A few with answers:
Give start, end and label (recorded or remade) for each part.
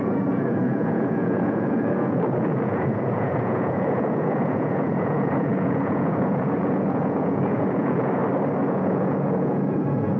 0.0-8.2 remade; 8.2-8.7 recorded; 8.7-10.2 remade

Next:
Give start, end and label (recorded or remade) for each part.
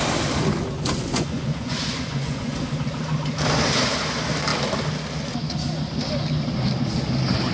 0.0-1.1 recorded; 1.1-2.6 remade; 2.6-7.5 recorded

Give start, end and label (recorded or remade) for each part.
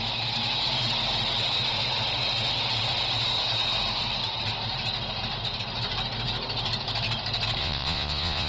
0.0-7.6 recorded; 7.6-8.5 remade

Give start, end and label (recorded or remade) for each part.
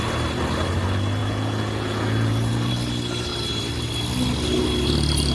0.0-1.2 recorded; 1.2-2.7 remade; 2.7-5.3 recorded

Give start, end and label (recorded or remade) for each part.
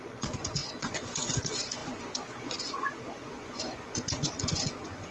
0.0-5.1 remade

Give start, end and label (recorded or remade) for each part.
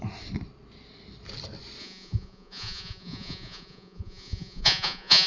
0.0-1.8 recorded; 1.8-5.3 remade